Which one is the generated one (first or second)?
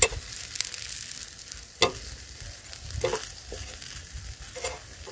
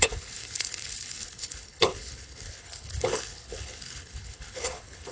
second